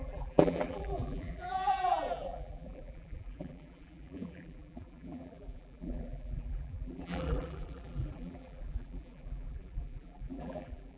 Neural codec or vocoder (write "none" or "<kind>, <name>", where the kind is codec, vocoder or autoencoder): vocoder, BigVGAN v2